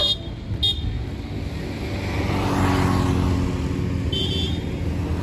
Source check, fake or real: real